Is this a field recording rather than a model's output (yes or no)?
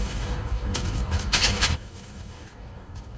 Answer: no